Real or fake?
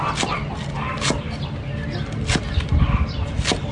real